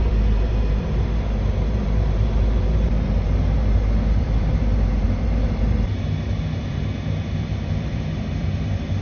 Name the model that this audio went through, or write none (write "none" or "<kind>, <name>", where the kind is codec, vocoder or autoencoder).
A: vocoder, BigVGAN v2